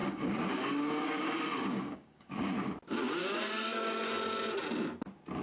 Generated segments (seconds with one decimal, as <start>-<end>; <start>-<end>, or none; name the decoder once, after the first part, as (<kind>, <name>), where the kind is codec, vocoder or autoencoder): 0.0-2.5 (codec, DAC); 3.2-4.1